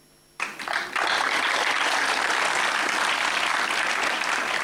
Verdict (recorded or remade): recorded